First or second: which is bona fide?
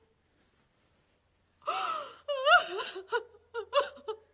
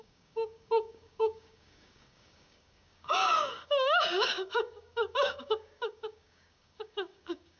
first